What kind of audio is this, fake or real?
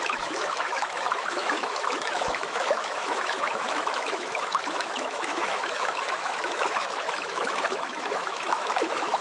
fake